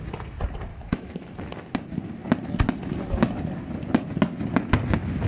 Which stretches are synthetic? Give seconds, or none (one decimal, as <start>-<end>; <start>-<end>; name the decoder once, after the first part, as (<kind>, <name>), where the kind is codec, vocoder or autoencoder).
0.7-1.3 (autoencoder, DAC-VAE)